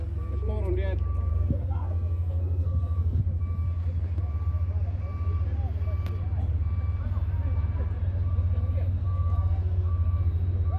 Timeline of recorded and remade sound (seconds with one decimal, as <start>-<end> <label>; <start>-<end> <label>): 0.0-1.3 recorded; 1.3-3.2 remade; 3.2-9.0 recorded; 9.0-10.2 remade; 10.2-10.8 recorded